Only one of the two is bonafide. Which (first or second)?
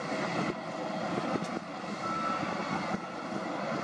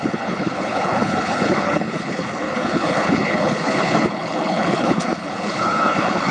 first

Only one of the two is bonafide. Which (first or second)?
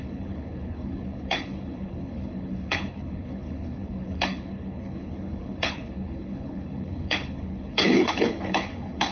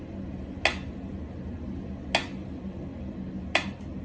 second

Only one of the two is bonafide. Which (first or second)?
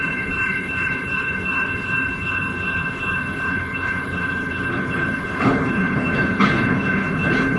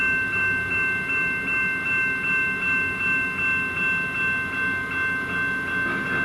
second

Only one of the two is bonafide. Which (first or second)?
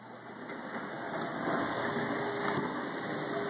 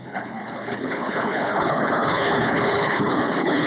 first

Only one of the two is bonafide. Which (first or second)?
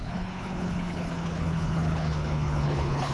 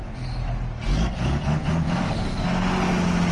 second